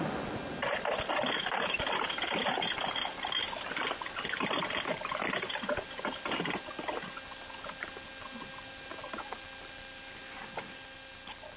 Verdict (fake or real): real